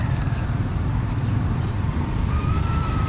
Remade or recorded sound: remade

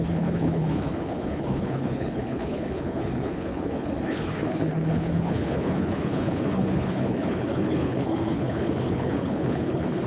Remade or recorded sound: remade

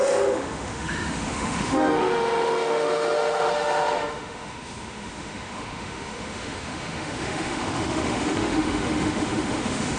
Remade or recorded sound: remade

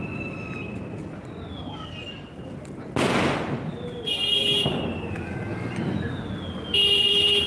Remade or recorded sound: recorded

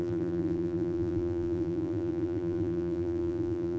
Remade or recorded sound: remade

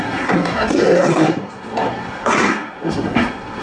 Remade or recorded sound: remade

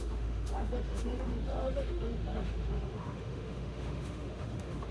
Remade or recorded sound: remade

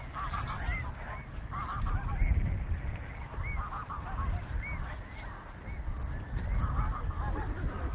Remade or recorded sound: recorded